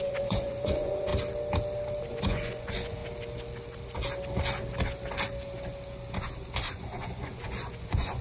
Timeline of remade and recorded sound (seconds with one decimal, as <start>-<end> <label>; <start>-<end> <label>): 0.0-1.1 remade; 1.1-2.1 recorded; 2.1-3.0 remade; 3.0-6.7 recorded; 6.7-8.2 remade